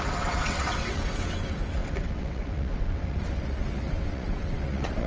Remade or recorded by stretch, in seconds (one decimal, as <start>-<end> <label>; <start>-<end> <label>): 0.0-5.1 remade